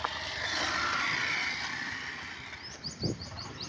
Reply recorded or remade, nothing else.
recorded